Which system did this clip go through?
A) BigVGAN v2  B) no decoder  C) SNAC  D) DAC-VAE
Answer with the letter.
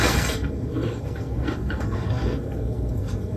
C